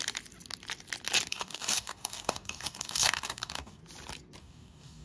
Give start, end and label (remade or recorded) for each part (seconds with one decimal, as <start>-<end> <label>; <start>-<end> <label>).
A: 0.0-1.3 recorded; 1.3-3.8 remade; 3.8-4.4 recorded; 4.4-5.0 remade